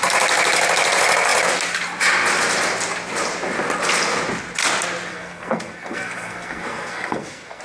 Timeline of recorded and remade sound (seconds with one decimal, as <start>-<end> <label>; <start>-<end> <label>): 0.0-5.1 recorded; 5.1-7.6 remade